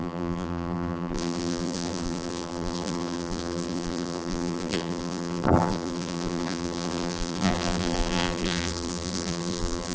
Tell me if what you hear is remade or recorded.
remade